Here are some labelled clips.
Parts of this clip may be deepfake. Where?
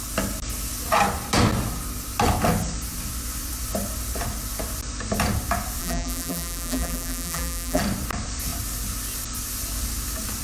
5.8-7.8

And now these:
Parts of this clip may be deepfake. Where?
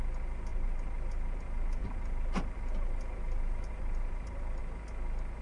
0.5-1.4; 1.8-4.6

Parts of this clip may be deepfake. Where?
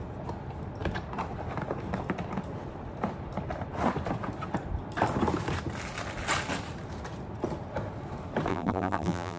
8.5-9.4